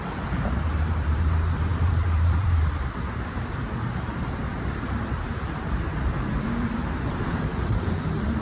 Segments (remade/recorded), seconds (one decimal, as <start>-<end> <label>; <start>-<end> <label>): 0.0-8.4 remade